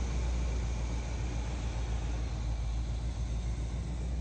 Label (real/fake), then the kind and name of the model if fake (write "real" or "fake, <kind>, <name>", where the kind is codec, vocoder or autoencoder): real